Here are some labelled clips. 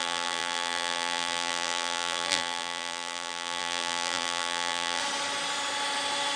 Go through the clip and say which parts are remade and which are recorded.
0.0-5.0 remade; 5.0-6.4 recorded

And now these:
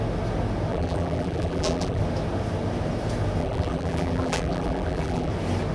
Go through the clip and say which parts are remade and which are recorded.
0.0-0.7 recorded; 0.7-2.0 remade; 2.0-3.4 recorded; 3.4-5.3 remade; 5.3-5.7 recorded

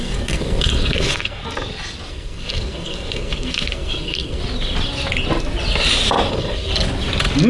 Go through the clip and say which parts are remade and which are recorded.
0.0-1.4 remade; 1.4-2.1 recorded; 2.1-4.4 remade; 4.4-6.3 recorded; 6.3-6.7 remade; 6.7-7.5 recorded

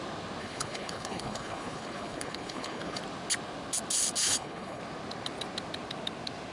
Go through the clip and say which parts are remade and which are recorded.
0.0-0.4 recorded; 0.4-3.0 remade; 3.0-4.2 recorded; 4.2-4.8 remade; 4.8-6.5 recorded

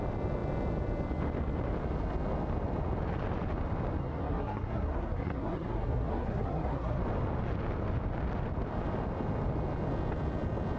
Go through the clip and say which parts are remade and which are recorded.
0.0-4.0 recorded; 4.0-7.0 remade; 7.0-10.8 recorded

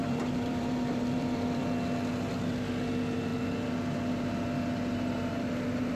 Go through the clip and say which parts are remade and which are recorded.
0.0-1.6 remade; 1.6-6.0 recorded